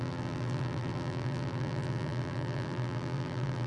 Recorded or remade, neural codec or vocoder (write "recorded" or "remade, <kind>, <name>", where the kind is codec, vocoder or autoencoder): remade, vocoder, BigVGAN v2